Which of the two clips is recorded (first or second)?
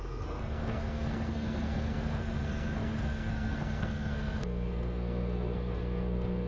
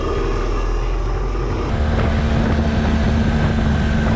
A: second